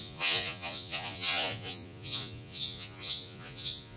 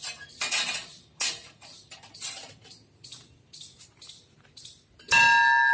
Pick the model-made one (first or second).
first